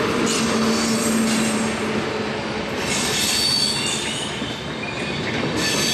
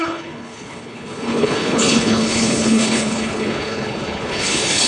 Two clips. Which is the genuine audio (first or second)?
first